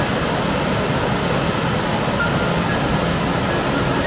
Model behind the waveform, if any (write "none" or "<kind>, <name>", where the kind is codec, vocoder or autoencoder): none